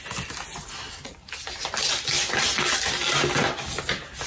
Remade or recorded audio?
recorded